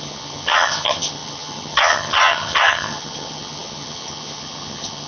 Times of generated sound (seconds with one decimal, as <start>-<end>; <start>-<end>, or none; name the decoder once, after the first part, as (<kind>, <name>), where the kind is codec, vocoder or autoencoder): 0.0-5.1 (vocoder, HiFi-GAN)

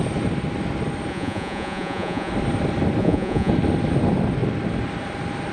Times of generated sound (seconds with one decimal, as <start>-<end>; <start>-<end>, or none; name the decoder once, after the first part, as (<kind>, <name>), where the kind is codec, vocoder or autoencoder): 1.1-2.3 (vocoder, Vocos); 3.0-3.5

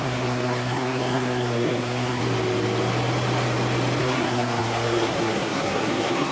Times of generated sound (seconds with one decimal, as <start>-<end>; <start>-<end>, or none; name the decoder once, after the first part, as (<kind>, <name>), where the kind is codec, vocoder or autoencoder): 0.0-2.2 (codec, SNAC); 4.0-6.3

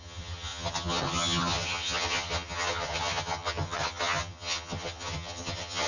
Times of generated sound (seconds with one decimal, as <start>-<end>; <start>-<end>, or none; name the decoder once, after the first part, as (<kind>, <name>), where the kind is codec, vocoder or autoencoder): 0.0-5.9 (vocoder, HiFi-GAN)

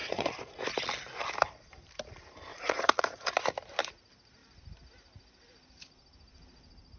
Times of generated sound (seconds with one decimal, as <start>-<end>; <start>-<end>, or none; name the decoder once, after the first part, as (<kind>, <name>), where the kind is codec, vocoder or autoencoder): 0.0-0.6 (vocoder, Vocos); 2.5-3.3

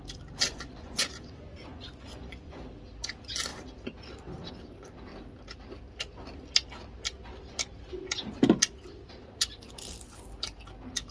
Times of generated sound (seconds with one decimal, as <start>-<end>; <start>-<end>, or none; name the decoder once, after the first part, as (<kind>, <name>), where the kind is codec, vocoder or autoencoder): 0.5-2.6 (vocoder, Vocos)